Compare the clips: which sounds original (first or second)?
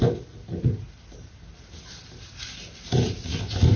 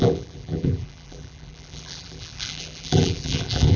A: first